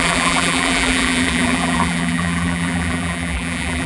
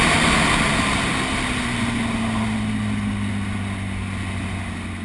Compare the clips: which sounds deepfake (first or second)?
first